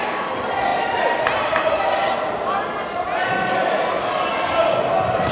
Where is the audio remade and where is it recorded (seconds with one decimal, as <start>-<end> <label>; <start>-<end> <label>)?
0.0-5.3 recorded